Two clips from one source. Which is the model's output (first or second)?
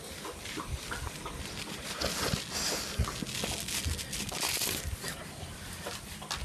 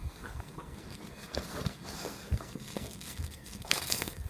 second